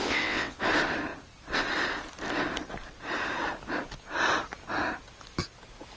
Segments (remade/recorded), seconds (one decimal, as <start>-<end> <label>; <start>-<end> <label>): 0.0-0.6 remade; 0.6-6.0 recorded